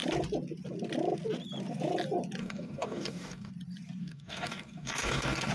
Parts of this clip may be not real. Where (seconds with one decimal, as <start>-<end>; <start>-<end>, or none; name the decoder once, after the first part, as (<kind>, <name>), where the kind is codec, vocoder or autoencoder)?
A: 2.4-3.5 (codec, DAC); 4.0-5.5